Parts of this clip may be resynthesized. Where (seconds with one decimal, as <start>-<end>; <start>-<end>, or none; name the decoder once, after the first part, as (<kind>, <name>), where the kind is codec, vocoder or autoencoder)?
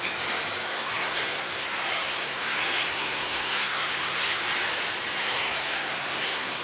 0.7-4.4 (codec, SNAC); 5.2-6.6